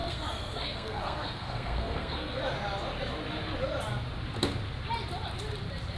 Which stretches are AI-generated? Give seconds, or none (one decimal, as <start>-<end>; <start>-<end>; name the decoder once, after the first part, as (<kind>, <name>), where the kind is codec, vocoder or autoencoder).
0.0-2.4 (codec, SNAC)